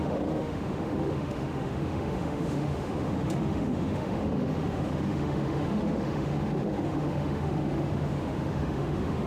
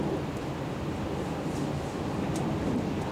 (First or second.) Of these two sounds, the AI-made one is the first